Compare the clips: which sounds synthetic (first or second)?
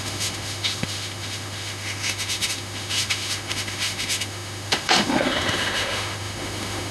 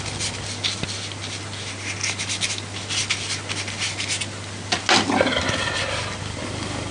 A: first